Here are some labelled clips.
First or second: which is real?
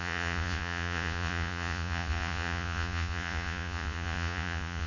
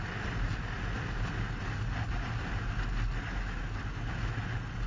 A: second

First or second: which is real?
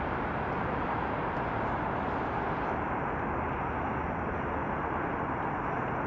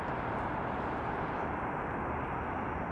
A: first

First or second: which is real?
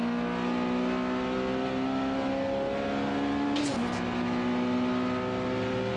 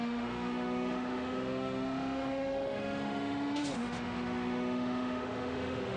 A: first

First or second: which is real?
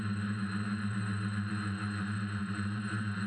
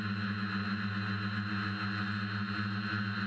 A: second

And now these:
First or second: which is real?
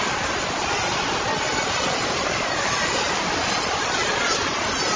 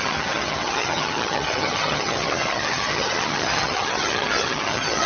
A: first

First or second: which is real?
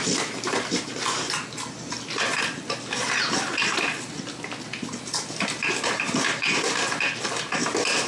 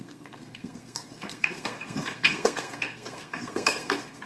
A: first